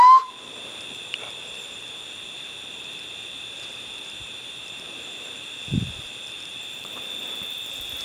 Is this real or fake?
fake